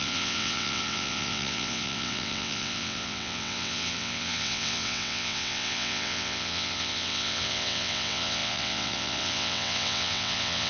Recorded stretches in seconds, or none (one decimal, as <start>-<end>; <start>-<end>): none